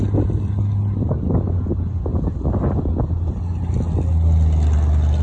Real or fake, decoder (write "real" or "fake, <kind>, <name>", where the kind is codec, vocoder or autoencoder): real